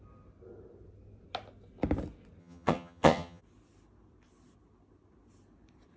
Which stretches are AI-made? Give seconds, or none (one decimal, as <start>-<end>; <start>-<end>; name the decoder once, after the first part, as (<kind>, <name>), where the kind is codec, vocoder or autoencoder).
2.4-3.4 (vocoder, HiFi-GAN)